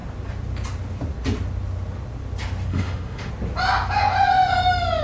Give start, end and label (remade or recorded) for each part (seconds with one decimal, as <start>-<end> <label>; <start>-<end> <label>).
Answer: 0.0-2.7 recorded; 2.7-3.3 remade; 3.3-5.0 recorded